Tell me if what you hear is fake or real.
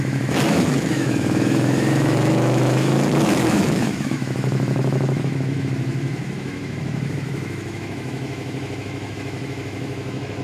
fake